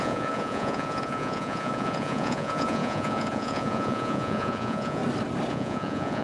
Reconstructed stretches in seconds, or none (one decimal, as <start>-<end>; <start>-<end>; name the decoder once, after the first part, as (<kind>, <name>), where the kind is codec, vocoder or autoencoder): 0.0-5.0 (vocoder, Vocos); 5.5-6.2